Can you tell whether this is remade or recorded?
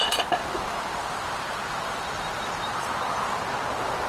remade